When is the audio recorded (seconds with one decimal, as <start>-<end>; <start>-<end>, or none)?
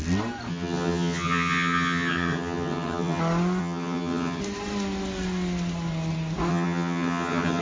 0.0-0.5; 3.2-3.6; 4.4-6.5